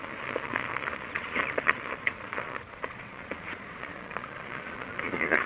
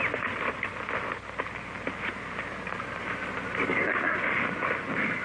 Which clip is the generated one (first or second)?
first